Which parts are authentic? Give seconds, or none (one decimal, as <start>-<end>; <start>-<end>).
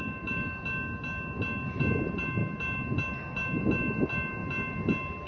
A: 0.0-5.3